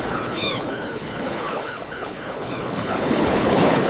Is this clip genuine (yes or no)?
no